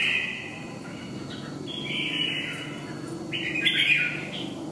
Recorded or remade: recorded